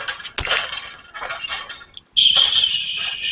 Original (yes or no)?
yes